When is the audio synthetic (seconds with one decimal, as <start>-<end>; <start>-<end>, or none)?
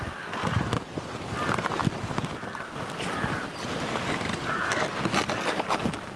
none